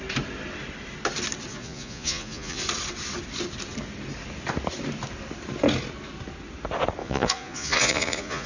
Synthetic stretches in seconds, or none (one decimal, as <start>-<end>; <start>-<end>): 1.5-2.6; 7.0-8.5